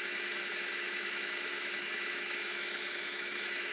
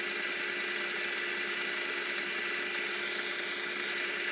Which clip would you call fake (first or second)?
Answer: first